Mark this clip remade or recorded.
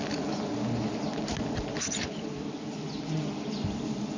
recorded